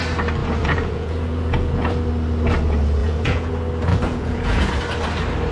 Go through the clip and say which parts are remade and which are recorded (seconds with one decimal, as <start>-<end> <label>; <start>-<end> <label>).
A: 0.0-0.4 recorded; 0.4-1.9 remade; 1.9-3.0 recorded; 3.0-3.5 remade; 3.5-3.9 recorded; 3.9-4.7 remade; 4.7-5.5 recorded